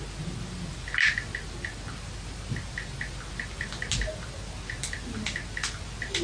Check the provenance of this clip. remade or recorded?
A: recorded